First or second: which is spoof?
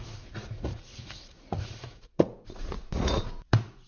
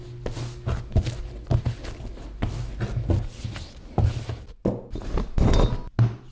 first